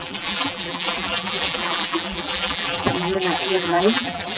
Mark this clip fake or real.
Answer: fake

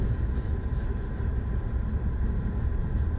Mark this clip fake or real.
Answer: real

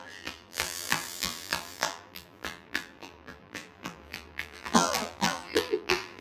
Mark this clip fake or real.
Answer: fake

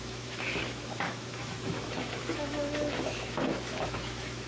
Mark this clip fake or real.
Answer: fake